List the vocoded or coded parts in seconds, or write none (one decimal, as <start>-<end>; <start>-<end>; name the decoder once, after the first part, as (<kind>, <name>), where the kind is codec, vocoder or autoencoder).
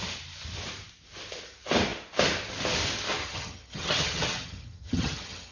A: 3.2-5.5 (vocoder, HiFi-GAN)